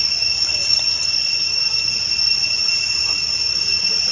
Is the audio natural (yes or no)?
yes